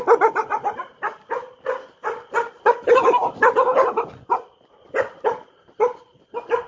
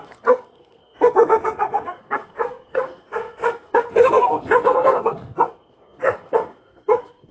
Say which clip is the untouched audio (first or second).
first